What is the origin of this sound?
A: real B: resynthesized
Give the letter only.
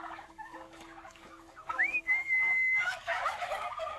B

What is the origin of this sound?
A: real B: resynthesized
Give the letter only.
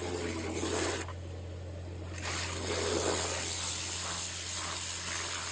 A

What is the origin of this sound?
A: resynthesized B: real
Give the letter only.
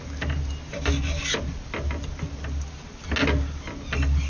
B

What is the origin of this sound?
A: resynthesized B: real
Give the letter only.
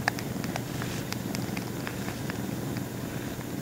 A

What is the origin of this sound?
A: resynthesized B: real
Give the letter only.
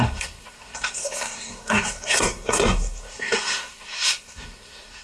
A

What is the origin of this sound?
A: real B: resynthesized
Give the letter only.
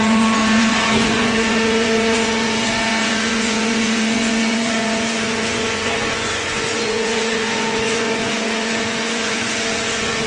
B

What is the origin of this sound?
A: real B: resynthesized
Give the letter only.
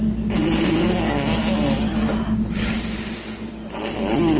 A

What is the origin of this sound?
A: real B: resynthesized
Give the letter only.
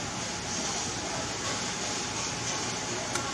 A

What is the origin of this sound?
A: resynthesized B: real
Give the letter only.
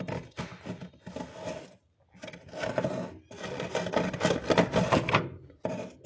B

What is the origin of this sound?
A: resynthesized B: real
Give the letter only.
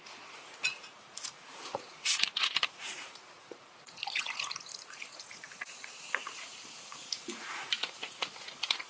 A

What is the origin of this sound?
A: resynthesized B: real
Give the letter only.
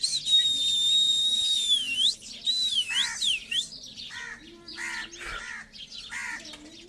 B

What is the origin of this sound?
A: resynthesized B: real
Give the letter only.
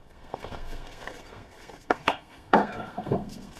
A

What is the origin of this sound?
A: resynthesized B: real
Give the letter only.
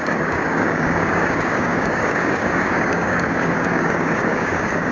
A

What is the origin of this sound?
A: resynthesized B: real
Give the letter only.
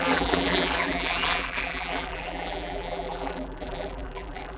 A